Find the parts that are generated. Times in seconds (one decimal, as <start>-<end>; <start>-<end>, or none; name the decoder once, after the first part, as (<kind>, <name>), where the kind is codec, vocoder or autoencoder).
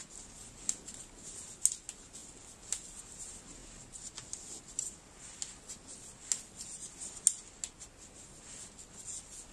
none